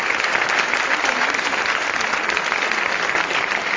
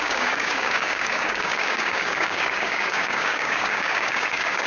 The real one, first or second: first